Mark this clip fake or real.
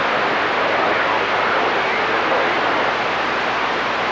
real